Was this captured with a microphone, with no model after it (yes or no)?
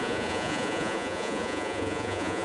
no